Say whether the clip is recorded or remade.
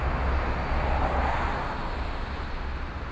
recorded